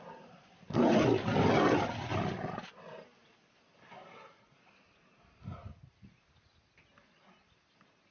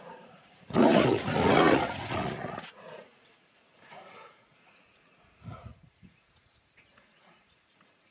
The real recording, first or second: first